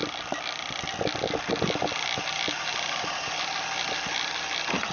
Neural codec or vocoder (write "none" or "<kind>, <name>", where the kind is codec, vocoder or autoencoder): none